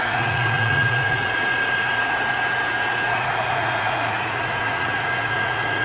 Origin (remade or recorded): remade